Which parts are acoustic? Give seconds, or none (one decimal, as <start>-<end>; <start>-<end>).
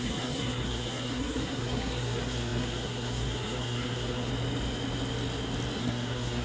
4.3-5.8